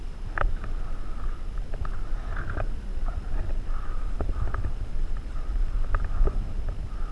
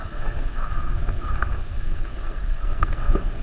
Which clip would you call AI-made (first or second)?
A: second